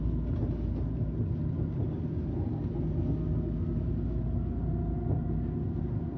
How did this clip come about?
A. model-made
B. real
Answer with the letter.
B